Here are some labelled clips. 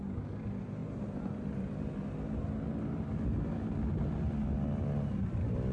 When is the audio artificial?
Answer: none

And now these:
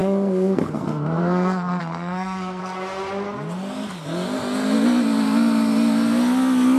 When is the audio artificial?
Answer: 0.0-2.6 (codec, SNAC)

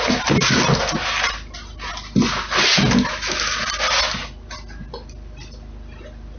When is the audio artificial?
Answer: none

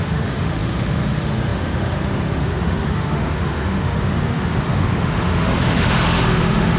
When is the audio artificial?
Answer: 0.0-6.8 (autoencoder, DAC-VAE)

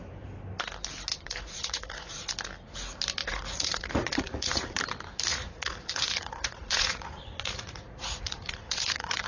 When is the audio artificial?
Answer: 1.1-2.3 (vocoder, Vocos); 3.2-4.8; 5.3-9.3

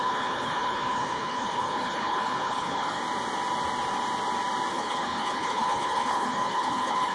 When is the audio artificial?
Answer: 0.0-3.0 (codec, HILCodec); 4.7-7.1